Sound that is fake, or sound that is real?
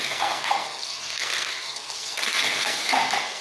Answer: fake